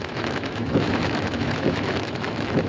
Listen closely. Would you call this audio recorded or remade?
remade